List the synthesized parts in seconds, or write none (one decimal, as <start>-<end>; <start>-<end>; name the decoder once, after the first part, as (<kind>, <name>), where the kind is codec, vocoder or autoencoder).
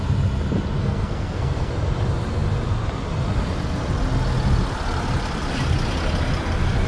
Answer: 0.8-1.7 (codec, SNAC)